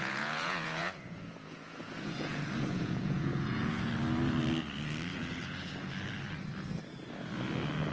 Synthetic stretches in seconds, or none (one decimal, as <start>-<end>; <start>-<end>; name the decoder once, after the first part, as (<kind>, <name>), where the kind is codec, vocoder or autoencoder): 0.0-3.9 (vocoder, Vocos); 5.1-5.9

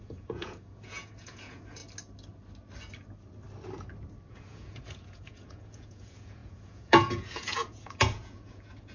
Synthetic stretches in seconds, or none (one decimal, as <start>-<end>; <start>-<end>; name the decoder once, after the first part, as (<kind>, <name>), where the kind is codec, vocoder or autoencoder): 0.0-1.8 (vocoder, Vocos); 4.3-8.9

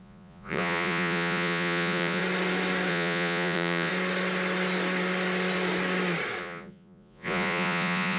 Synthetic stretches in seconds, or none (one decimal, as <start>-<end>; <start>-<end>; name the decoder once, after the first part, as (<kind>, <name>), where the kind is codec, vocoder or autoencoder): 0.0-2.2 (vocoder, Vocos); 2.9-3.9; 6.4-8.2

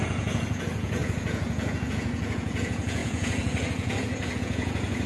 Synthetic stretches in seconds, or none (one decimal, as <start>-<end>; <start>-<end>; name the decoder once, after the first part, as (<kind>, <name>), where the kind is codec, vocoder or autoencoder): 0.0-5.1 (vocoder, Vocos)

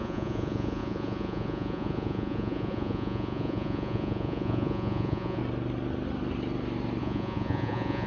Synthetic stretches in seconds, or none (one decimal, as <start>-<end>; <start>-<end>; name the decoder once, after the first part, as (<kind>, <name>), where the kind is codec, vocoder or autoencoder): 0.0-5.4 (vocoder, Vocos); 7.0-8.1

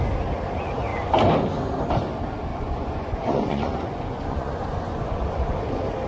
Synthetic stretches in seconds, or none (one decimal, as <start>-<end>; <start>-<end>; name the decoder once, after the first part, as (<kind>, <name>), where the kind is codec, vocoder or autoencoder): 2.5-5.5 (vocoder, Vocos)

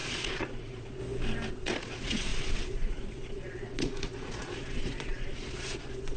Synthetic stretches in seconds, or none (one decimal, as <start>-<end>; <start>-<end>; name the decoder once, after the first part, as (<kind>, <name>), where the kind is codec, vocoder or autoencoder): 0.0-1.0 (vocoder, Vocos); 1.5-6.2

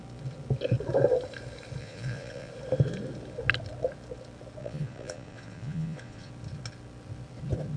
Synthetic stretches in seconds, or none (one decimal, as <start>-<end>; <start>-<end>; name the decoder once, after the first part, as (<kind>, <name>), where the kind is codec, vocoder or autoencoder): 1.8-2.5 (vocoder, Vocos); 4.6-6.3